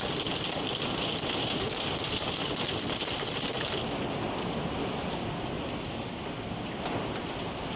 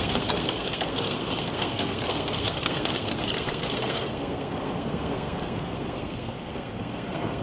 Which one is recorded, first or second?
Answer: first